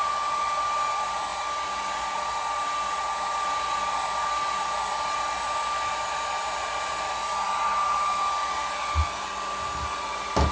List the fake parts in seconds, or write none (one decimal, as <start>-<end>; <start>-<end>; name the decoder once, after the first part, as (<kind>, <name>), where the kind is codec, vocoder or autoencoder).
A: none